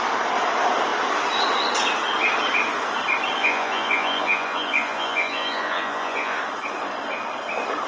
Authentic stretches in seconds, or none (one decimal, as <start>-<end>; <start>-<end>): 0.0-3.4; 6.4-7.9